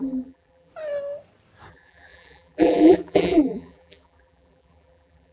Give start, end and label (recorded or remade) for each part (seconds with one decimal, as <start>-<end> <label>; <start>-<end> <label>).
0.0-0.7 remade; 0.7-1.7 recorded; 1.7-5.3 remade